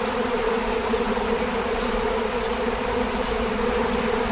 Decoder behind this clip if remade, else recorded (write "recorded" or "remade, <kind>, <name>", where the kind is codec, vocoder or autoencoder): recorded